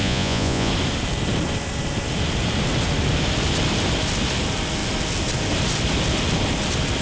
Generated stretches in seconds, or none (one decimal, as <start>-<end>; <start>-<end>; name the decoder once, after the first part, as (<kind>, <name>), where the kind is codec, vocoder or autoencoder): 0.0-0.7 (vocoder, Vocos)